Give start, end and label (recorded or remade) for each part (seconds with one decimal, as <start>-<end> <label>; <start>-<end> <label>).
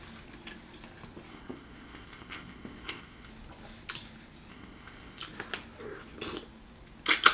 0.0-1.3 recorded; 1.3-3.3 remade; 3.3-4.5 recorded; 4.5-5.2 remade; 5.2-7.3 recorded